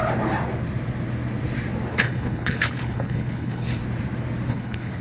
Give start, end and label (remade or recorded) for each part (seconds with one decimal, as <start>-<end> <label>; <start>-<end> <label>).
0.0-1.9 recorded; 1.9-3.8 remade; 3.8-4.5 recorded; 4.5-5.0 remade